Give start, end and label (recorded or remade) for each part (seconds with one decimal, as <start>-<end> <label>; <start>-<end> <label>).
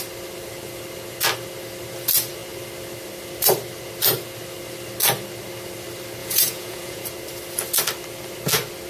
0.0-6.2 recorded; 6.2-7.0 remade; 7.0-8.9 recorded